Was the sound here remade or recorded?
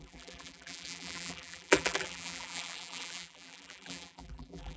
remade